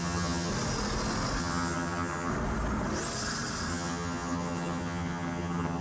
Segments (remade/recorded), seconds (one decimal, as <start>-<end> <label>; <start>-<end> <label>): 0.0-0.5 remade; 0.5-1.4 recorded; 1.4-2.3 remade; 2.3-3.7 recorded; 3.7-5.8 remade